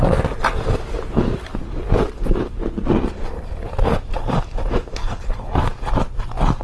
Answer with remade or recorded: recorded